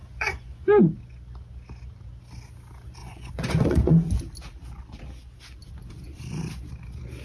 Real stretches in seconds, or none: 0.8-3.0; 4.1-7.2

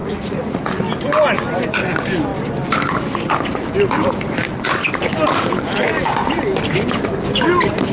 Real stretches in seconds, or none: 0.6-7.9

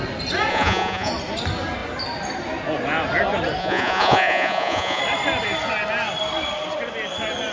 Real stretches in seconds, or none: 0.0-0.5; 1.1-3.6; 5.0-7.5

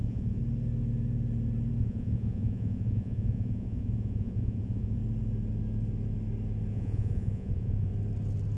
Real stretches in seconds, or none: 0.4-1.8; 5.0-6.7; 7.9-8.6